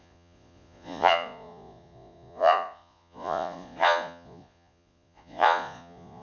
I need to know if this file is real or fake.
fake